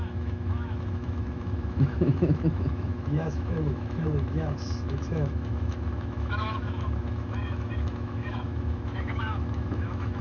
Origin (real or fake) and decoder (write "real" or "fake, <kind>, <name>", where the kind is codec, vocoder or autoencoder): fake, autoencoder, DAC-VAE